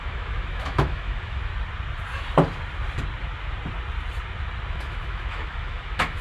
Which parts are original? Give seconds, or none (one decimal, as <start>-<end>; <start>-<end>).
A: 1.5-4.7